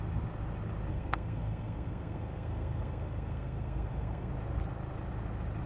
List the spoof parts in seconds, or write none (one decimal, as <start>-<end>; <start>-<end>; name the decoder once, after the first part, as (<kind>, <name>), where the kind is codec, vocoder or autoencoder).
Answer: 0.9-4.3 (codec, SNAC)